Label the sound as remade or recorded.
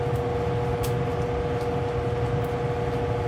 recorded